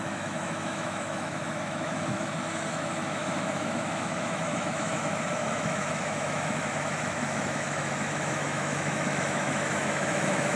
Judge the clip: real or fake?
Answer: fake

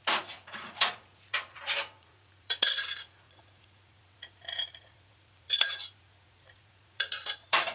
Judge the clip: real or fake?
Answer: fake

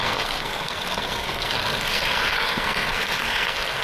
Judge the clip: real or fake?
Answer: fake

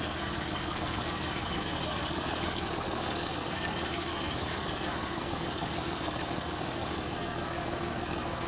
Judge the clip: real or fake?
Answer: fake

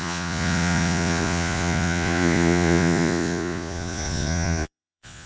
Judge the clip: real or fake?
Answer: fake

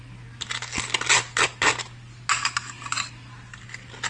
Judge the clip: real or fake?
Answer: real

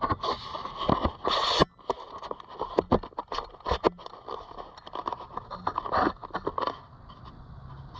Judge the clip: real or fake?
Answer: real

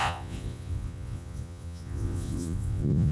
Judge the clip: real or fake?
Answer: fake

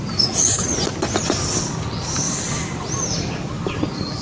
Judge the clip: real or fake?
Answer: real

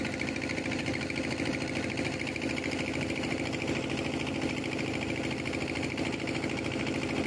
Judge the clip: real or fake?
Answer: real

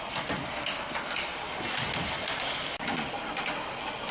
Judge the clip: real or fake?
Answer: real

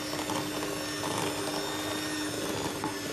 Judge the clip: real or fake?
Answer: real